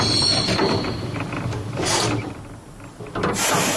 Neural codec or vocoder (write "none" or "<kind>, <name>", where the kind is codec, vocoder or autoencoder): none